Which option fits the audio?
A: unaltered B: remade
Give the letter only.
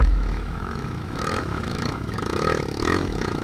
B